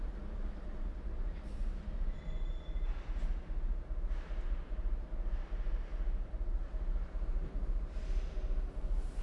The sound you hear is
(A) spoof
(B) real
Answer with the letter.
A